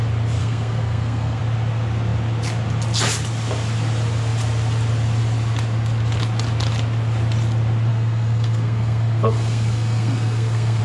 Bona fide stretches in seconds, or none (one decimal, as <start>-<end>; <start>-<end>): 0.0-0.4; 1.4-7.9